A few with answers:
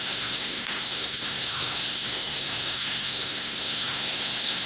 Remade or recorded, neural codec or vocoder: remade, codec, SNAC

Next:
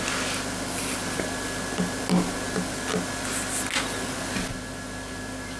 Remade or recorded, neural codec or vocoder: recorded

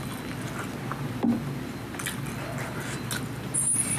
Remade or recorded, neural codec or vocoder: recorded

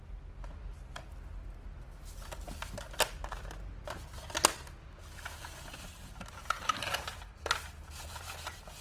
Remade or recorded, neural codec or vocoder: recorded